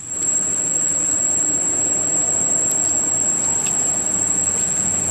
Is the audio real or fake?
real